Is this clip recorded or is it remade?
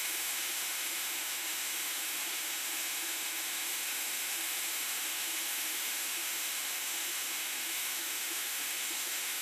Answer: remade